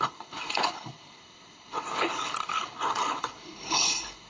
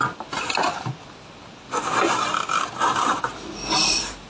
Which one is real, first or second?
second